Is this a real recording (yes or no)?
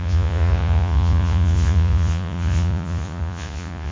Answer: no